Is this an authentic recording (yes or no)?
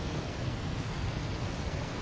no